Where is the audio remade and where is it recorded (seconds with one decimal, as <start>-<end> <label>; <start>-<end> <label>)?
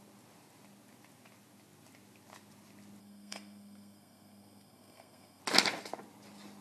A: 0.0-3.0 recorded; 3.0-5.4 remade; 5.4-6.6 recorded